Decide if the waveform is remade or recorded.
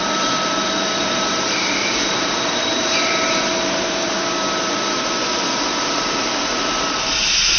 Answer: remade